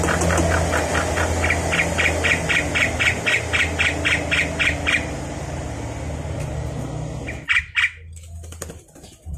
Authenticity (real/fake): real